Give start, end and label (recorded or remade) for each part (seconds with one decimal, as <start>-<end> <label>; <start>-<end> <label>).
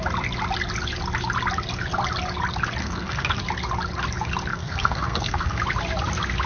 0.0-2.8 recorded; 2.8-3.4 remade; 3.4-4.5 recorded; 4.5-5.6 remade; 5.6-6.5 recorded